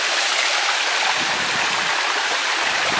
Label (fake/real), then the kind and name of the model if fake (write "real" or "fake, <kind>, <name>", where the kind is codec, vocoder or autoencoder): real